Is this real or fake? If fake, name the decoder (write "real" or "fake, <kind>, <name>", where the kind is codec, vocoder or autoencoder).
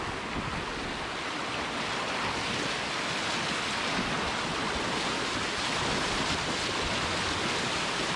real